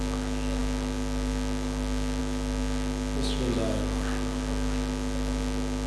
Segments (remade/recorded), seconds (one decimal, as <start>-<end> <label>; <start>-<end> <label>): 0.0-5.9 recorded